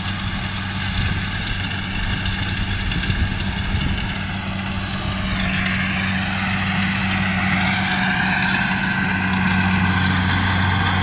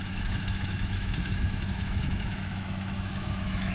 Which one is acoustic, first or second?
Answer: first